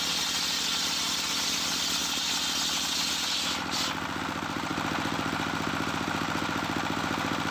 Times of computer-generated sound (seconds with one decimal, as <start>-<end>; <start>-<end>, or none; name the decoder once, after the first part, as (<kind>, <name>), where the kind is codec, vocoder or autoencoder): none